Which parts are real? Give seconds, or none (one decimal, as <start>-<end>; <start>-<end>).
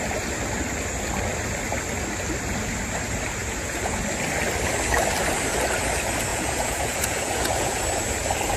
0.0-3.4; 4.0-6.3; 7.8-8.6